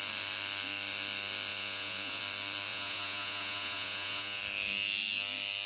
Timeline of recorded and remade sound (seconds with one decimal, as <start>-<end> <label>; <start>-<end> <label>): 0.0-1.5 recorded; 1.5-2.2 remade; 2.2-2.7 recorded; 2.7-4.4 remade; 4.4-5.7 recorded